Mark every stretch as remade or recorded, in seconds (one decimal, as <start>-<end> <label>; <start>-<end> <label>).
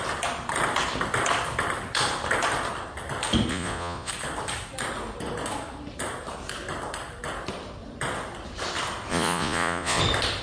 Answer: 0.0-3.5 recorded; 3.5-4.1 remade; 4.1-9.1 recorded; 9.1-10.0 remade; 10.0-10.4 recorded